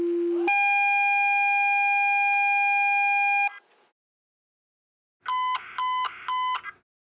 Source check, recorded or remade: recorded